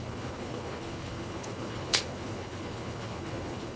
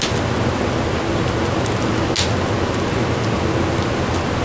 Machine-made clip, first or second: first